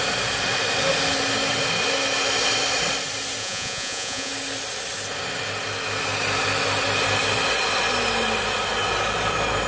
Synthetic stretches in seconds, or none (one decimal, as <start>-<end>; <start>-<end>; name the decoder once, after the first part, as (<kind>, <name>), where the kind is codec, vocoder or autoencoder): 3.4-4.3 (vocoder, Vocos)